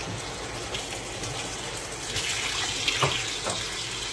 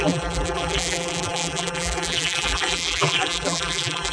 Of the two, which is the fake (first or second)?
second